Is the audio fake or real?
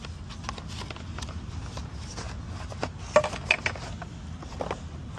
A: real